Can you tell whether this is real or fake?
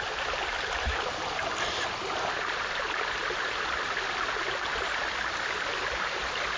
fake